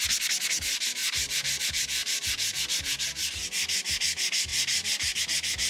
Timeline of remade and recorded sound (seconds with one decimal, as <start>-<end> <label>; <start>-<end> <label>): 0.0-1.0 recorded; 1.0-1.6 remade; 1.6-2.0 recorded; 2.0-2.6 remade; 2.6-4.5 recorded; 4.5-5.2 remade; 5.2-5.7 recorded